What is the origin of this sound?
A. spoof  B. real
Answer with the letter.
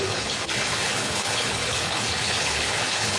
A